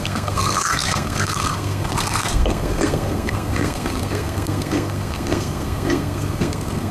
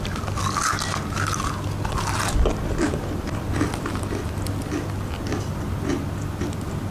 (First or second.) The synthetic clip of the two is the first